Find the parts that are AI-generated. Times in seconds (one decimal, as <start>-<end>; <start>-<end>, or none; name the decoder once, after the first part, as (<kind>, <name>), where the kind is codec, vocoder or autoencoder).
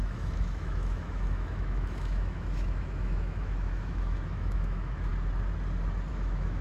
0.0-5.1 (autoencoder, DAC-VAE); 6.1-6.6